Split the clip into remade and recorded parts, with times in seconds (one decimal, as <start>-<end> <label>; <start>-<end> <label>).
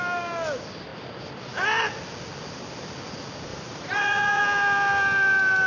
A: 0.0-3.5 recorded; 3.5-4.4 remade; 4.4-5.7 recorded